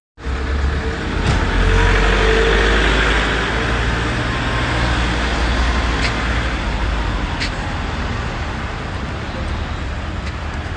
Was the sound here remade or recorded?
recorded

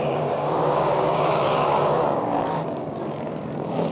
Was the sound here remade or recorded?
remade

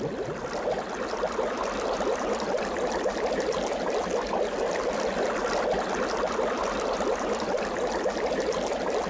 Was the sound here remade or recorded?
recorded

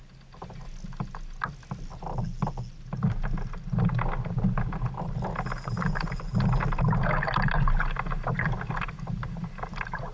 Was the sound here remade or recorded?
recorded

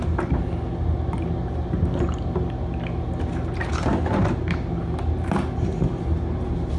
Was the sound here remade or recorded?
recorded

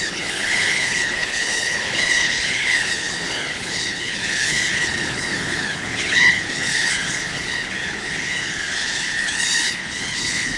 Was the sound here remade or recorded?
remade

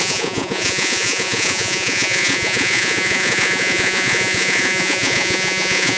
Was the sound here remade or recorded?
remade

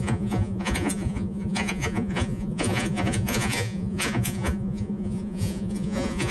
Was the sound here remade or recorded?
remade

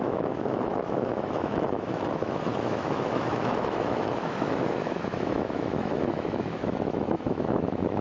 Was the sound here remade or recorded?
remade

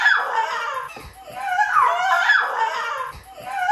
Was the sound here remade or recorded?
recorded